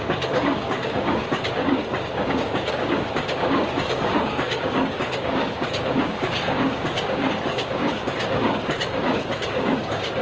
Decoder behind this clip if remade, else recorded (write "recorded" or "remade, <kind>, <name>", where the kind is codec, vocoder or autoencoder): remade, codec, DAC